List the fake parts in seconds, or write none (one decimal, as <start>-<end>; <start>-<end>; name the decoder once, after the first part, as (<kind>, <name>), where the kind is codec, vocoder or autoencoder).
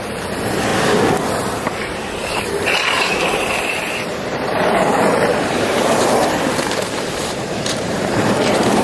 0.0-0.7 (vocoder, BigVGAN v2); 1.3-8.8